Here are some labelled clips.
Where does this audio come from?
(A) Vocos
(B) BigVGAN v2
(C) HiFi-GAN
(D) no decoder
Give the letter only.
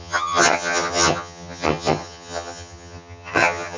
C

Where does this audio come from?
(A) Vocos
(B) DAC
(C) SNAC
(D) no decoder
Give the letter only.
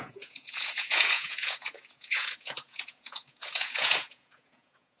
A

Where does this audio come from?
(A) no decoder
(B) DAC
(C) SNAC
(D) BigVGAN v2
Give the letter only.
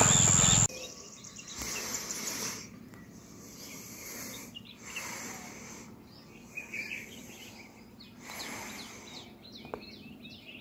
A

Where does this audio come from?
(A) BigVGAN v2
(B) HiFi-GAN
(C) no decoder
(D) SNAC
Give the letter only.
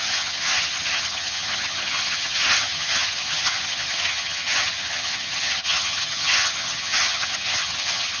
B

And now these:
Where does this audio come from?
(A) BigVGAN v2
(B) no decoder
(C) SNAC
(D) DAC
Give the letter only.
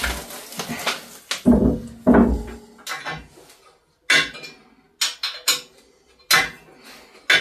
B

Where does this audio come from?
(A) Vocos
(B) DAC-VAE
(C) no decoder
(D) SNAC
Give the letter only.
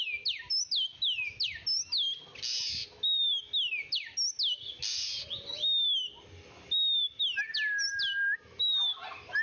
C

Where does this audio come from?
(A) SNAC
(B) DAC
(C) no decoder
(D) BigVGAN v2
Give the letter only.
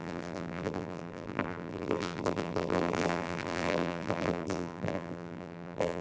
D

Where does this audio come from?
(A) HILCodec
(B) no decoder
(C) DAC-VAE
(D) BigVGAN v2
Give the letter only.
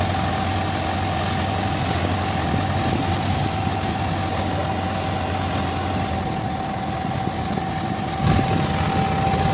B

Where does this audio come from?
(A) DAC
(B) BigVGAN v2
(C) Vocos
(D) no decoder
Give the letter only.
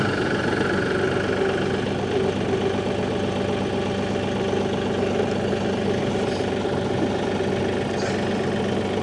D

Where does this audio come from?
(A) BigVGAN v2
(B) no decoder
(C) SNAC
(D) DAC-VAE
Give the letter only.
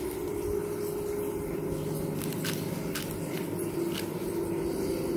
B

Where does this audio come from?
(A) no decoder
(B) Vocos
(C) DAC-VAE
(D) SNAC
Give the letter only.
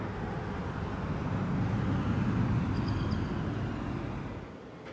A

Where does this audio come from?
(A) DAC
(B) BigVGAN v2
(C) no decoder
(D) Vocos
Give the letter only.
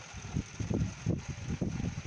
B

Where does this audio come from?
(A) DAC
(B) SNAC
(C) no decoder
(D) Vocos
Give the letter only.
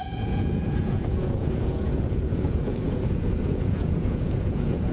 D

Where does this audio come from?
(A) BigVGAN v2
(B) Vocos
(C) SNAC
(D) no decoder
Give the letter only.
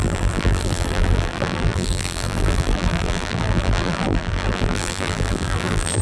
A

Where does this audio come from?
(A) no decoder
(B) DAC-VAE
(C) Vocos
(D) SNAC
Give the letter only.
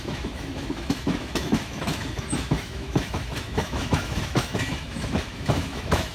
B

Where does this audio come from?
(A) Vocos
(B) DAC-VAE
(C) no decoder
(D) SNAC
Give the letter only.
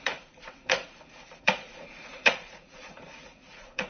A